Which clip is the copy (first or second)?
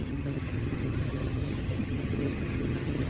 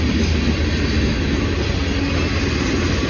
first